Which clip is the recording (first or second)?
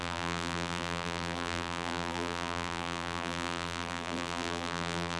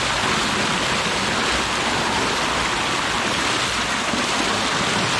second